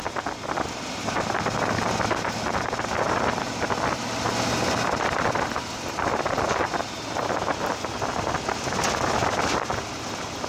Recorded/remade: recorded